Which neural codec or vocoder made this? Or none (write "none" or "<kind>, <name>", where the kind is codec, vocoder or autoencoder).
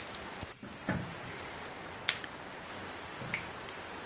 none